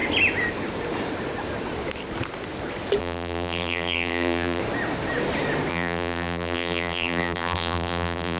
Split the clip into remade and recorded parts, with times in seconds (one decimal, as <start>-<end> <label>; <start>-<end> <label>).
0.0-3.0 recorded; 3.0-4.6 remade; 4.6-5.7 recorded; 5.7-8.4 remade